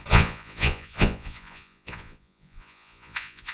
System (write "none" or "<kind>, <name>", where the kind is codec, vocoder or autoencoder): vocoder, Vocos